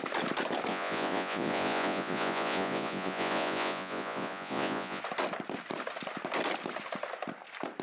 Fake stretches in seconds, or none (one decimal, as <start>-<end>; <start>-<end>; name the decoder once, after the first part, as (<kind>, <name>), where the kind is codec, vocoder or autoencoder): 0.7-5.0 (vocoder, Vocos)